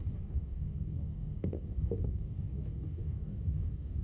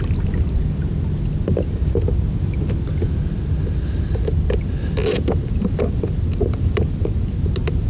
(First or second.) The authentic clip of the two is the second